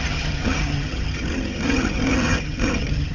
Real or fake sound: fake